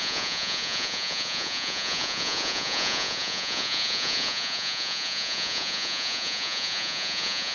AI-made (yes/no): yes